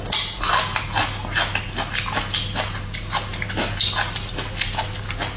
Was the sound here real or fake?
real